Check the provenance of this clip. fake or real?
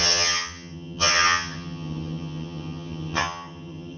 fake